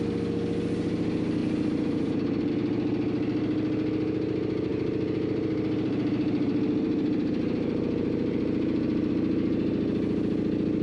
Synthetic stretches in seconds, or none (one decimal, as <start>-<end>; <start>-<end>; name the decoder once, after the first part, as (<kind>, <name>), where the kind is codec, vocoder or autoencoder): 1.4-2.5 (vocoder, BigVGAN v2); 4.7-9.1